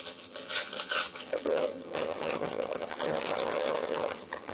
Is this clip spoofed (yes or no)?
yes